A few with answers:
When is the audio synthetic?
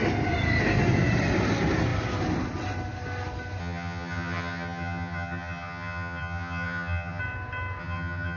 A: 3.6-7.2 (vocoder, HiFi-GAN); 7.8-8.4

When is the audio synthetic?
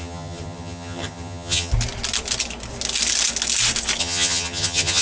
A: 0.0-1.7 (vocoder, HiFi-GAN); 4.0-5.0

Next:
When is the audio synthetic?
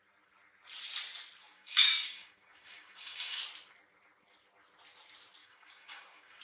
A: 1.4-3.4 (codec, DAC); 5.4-6.4